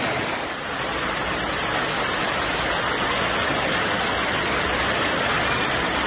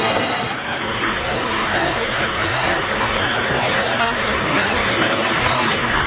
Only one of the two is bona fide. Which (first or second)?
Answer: first